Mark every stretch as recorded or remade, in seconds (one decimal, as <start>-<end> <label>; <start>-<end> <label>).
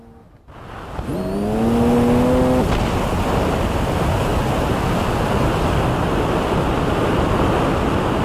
0.0-8.2 recorded